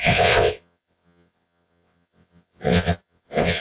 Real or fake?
fake